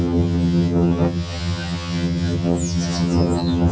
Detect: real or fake fake